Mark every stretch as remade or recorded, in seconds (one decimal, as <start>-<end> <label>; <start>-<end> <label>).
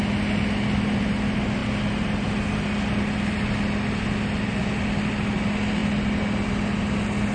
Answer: 0.0-7.3 recorded